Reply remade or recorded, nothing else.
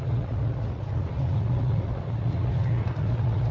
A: remade